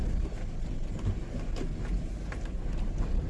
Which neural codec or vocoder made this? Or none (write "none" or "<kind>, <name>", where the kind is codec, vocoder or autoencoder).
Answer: none